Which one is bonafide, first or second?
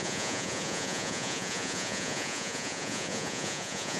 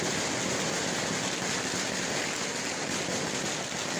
second